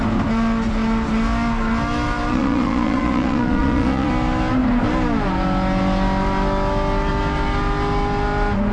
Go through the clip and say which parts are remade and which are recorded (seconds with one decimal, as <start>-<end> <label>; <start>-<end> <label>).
0.0-2.3 recorded; 2.3-4.1 remade; 4.1-8.7 recorded